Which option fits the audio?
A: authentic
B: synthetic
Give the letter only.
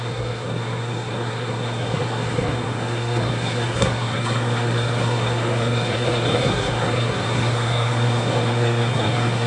B